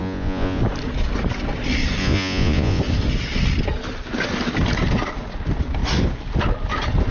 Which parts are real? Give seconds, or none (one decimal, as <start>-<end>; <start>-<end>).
0.6-2.0; 2.8-7.1